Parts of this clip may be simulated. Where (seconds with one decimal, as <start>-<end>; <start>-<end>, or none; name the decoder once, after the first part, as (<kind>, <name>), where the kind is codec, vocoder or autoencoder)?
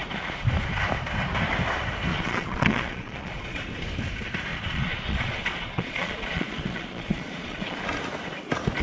2.1-3.6 (vocoder, Vocos); 4.5-7.8